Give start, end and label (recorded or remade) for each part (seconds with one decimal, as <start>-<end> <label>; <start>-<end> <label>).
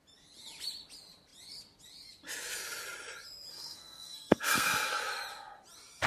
0.0-3.5 recorded; 3.5-5.0 remade; 5.0-6.1 recorded